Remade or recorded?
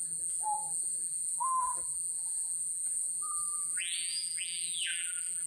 remade